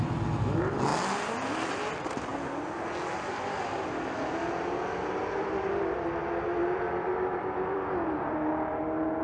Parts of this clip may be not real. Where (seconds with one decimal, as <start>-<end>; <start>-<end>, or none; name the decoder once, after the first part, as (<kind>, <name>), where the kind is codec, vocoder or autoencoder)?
6.6-8.5 (vocoder, BigVGAN v2)